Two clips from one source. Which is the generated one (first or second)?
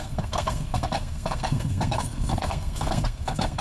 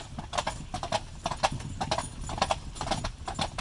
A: first